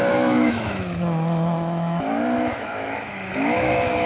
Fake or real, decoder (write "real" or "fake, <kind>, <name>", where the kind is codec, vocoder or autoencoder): fake, autoencoder, DAC-VAE